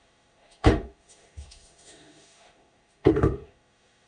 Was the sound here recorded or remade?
remade